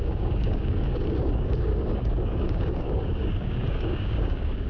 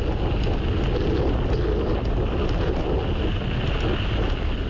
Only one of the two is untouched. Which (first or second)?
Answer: second